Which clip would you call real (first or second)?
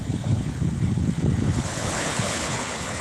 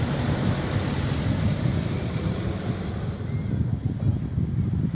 second